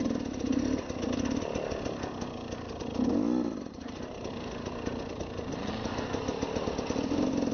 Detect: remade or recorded recorded